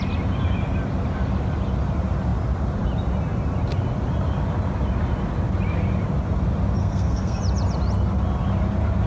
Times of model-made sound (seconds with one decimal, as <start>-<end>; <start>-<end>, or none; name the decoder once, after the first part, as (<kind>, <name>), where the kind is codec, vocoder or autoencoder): 6.8-7.4 (codec, SNAC)